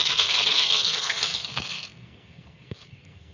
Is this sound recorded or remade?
remade